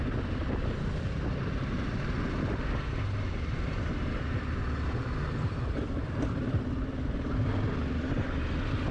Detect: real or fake real